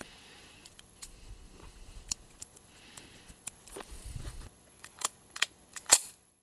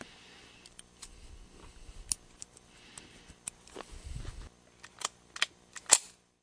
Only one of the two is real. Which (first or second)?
second